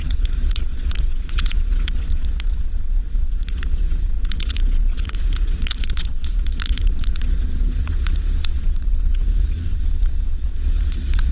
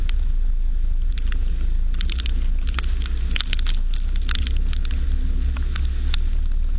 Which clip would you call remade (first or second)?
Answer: first